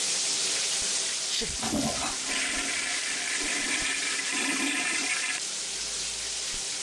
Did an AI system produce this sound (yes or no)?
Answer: yes